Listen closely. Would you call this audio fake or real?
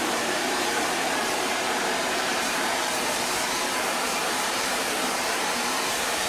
fake